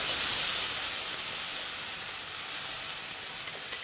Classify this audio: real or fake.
real